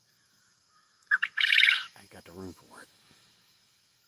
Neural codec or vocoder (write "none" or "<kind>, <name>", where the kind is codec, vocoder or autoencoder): autoencoder, DAC-VAE